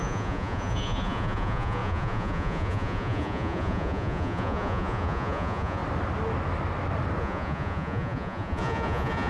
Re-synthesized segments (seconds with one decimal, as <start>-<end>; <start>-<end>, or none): 0.0-5.8; 7.2-9.3